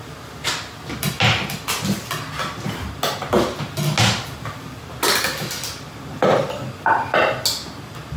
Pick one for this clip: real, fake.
real